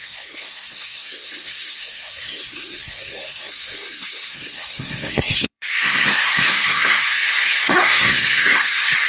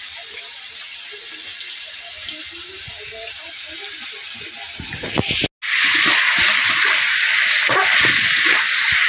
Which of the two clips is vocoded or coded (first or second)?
first